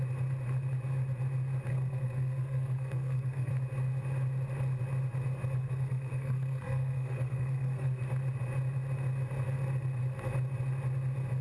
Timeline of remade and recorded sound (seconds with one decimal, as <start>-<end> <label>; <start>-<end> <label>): 0.0-1.7 recorded; 1.7-3.5 remade; 3.5-5.6 recorded; 5.6-8.0 remade; 8.0-11.4 recorded